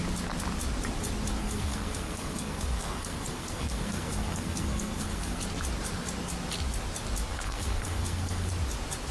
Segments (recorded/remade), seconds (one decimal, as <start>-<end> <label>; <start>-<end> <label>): 0.0-1.4 recorded; 1.4-5.4 remade; 5.4-7.3 recorded; 7.3-8.5 remade; 8.5-9.1 recorded